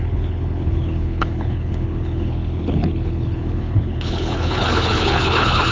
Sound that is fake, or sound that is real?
fake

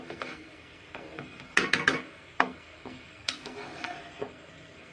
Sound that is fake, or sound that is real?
fake